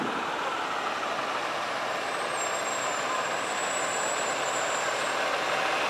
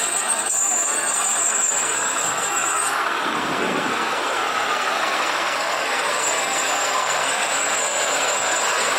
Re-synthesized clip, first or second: second